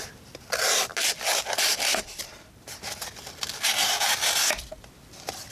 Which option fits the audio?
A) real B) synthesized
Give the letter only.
A